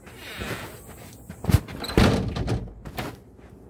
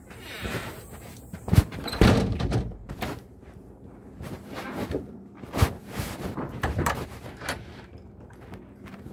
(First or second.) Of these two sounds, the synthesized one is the second